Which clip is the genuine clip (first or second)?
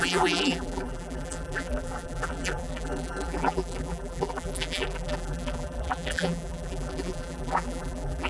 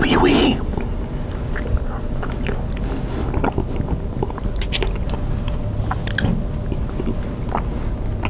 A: second